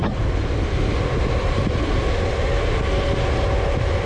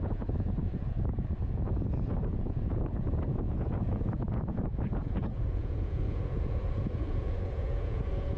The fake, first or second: second